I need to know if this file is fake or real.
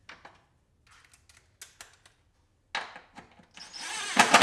real